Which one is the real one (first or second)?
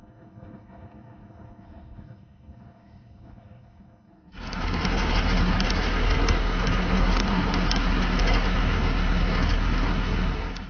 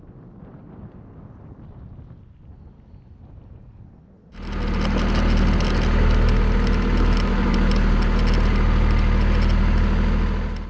second